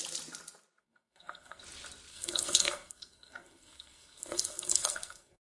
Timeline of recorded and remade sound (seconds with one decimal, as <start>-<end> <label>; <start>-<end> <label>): 0.0-0.8 recorded; 0.8-1.6 remade; 1.6-2.1 recorded; 2.1-5.6 remade